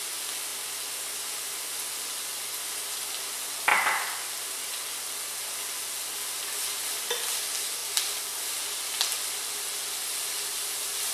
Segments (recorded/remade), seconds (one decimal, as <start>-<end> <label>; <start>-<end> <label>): 0.0-11.1 recorded